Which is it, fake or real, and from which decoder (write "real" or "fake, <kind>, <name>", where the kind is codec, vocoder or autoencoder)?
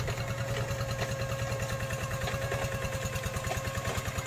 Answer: real